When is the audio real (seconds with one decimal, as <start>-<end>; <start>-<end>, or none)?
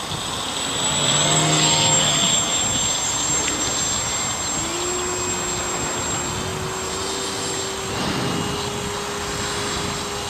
0.0-10.3